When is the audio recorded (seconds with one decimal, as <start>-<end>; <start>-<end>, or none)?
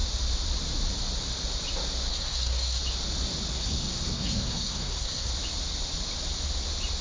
0.0-2.1; 2.8-3.5; 5.3-7.0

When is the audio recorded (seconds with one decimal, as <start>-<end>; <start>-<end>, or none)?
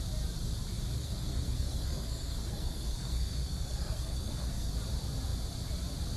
0.0-1.0; 4.7-6.2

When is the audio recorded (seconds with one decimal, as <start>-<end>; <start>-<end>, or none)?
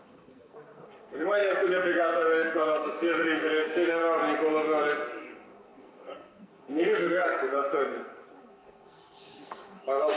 4.0-5.2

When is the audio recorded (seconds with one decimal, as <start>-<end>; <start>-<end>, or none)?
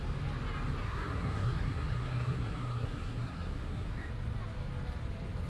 0.0-0.8; 4.1-5.5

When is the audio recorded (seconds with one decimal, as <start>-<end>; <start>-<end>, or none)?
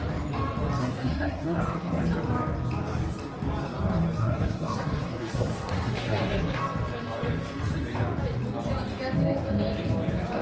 0.0-0.8; 2.0-4.2; 6.6-10.4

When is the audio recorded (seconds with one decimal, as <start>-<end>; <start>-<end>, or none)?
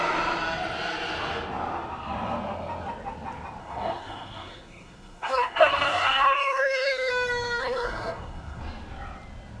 0.0-3.6; 7.1-7.6; 8.6-9.6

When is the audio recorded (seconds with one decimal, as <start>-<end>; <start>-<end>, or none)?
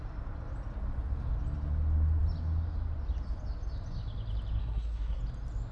0.0-4.6; 5.2-5.7